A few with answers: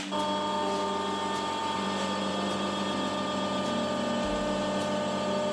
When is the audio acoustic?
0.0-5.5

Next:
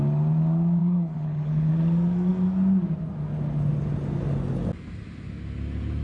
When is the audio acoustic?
0.0-0.8; 1.7-6.0

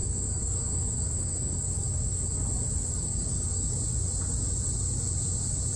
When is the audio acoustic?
2.2-2.9; 3.7-5.8

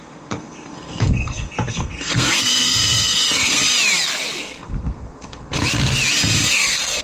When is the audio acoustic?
3.6-4.4; 5.6-6.5

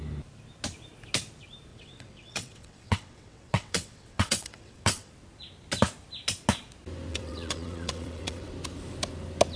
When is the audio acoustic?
0.0-1.7; 5.1-7.1; 8.5-9.6

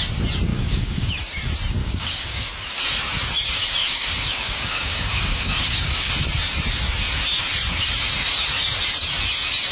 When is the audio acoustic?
0.0-0.5; 1.1-1.8; 2.5-3.8; 6.1-9.7

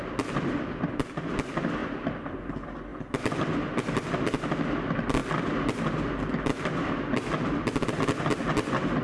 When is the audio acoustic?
0.0-9.0

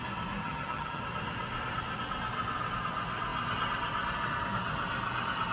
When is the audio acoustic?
0.0-0.4; 1.0-5.5